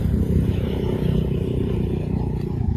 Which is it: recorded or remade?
remade